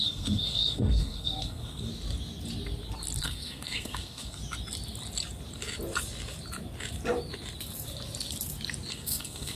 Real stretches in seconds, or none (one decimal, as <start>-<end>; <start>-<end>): 1.9-3.2; 4.4-8.9